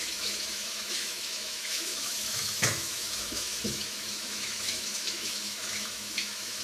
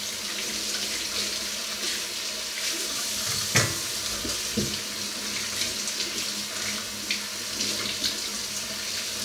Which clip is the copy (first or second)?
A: first